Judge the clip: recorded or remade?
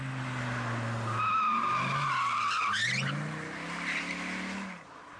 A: recorded